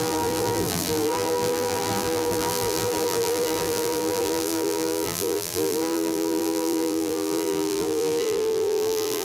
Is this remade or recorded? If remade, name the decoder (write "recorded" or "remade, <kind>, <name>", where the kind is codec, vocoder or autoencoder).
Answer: remade, vocoder, BigVGAN v2